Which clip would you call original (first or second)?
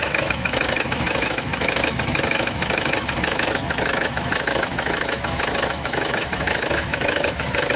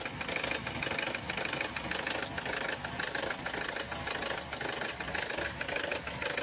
second